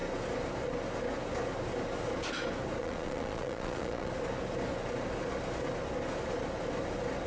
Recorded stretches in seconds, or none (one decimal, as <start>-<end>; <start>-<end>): 0.0-2.8; 4.1-7.3